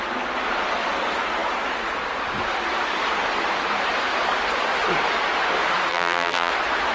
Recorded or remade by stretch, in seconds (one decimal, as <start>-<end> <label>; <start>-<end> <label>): 0.0-5.9 recorded; 5.9-6.5 remade; 6.5-6.9 recorded